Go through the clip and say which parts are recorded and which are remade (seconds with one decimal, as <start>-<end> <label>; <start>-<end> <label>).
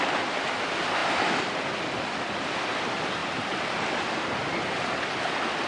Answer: 0.0-3.2 recorded; 3.2-4.1 remade; 4.1-5.7 recorded